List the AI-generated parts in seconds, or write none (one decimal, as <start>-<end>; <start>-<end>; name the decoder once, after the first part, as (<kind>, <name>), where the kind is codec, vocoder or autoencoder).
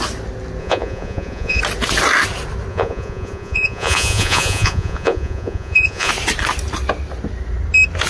0.6-1.6 (vocoder, Vocos); 2.7-6.1